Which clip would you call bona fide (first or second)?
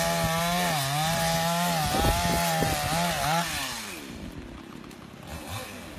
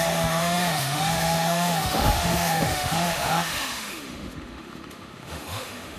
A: first